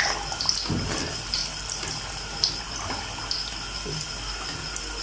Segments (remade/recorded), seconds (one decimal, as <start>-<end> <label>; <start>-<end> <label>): 0.0-5.0 recorded